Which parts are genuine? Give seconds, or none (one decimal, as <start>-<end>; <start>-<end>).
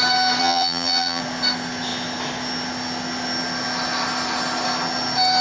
0.0-0.4; 1.2-5.4